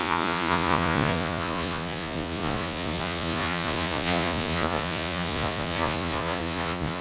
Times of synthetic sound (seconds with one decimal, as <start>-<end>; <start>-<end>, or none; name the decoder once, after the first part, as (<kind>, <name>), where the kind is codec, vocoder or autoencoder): 0.0-7.0 (vocoder, Vocos)